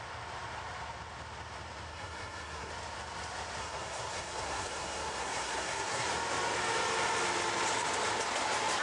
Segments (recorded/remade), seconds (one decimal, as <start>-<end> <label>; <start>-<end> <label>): 0.0-1.9 recorded; 1.9-2.7 remade; 2.7-3.6 recorded; 3.6-6.1 remade; 6.1-8.8 recorded